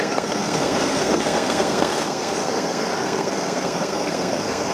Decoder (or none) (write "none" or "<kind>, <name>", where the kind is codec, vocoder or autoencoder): codec, SNAC